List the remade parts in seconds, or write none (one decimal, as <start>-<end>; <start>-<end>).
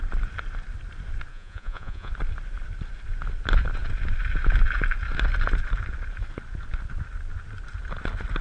1.3-2.1